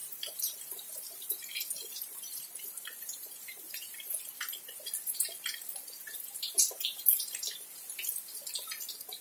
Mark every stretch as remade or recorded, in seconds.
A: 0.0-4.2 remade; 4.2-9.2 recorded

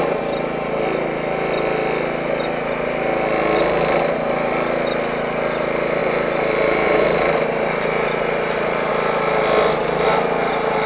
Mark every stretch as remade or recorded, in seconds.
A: 0.0-6.0 recorded; 6.0-8.9 remade; 8.9-10.9 recorded

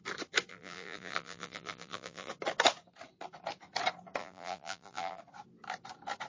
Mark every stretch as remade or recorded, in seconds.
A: 0.0-0.5 recorded; 0.5-2.3 remade; 2.3-4.2 recorded; 4.2-5.2 remade; 5.2-6.3 recorded

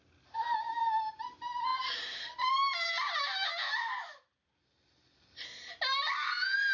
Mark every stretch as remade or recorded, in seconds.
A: 0.0-1.7 recorded; 1.7-4.5 remade; 4.5-6.7 recorded

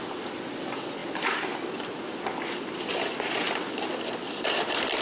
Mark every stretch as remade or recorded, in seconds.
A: 0.0-5.0 recorded

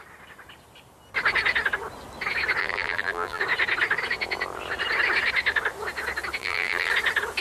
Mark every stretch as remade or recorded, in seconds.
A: 0.0-2.6 recorded; 2.6-3.4 remade; 3.4-6.4 recorded; 6.4-6.9 remade; 6.9-7.4 recorded

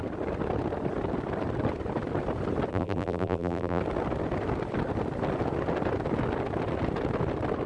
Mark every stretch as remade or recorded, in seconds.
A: 0.0-2.7 recorded; 2.7-3.8 remade; 3.8-7.7 recorded

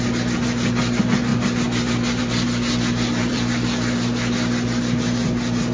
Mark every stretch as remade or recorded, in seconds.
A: 0.0-3.2 recorded; 3.2-3.9 remade; 3.9-5.7 recorded